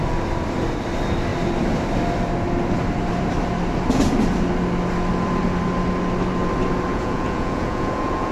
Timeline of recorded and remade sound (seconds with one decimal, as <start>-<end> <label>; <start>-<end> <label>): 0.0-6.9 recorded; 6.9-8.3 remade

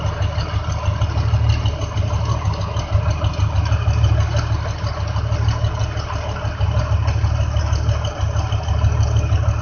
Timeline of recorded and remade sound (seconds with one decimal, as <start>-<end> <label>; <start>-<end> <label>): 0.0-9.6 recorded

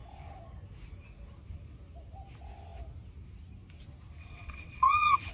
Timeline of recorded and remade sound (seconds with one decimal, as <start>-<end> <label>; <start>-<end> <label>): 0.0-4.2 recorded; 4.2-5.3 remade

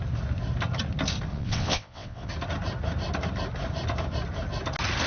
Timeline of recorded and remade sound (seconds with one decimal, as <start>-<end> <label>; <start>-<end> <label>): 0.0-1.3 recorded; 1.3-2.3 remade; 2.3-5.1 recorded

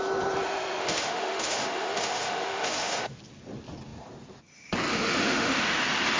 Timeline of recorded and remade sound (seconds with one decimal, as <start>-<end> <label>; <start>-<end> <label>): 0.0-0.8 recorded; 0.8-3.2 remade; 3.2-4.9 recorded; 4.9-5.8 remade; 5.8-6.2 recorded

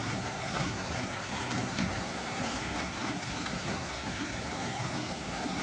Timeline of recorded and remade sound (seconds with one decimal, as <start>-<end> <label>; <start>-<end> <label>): 0.0-5.6 remade

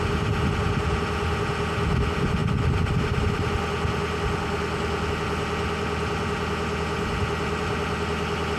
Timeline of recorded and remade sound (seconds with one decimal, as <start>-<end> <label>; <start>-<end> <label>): 0.0-8.6 recorded